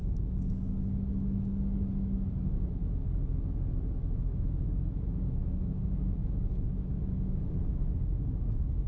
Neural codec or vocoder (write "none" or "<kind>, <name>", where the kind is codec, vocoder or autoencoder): autoencoder, DAC-VAE